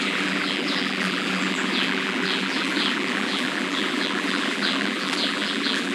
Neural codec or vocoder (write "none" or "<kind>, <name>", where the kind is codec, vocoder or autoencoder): vocoder, BigVGAN v2